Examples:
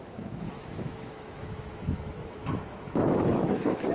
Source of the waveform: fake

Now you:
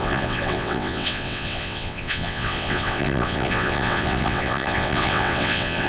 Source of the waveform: fake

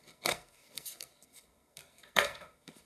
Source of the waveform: fake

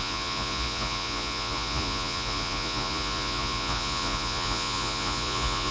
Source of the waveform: fake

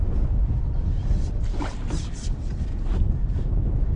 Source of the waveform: real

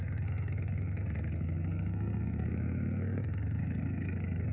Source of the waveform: fake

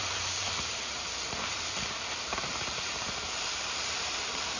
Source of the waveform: fake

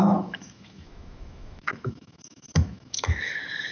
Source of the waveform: fake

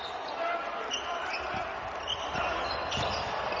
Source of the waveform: real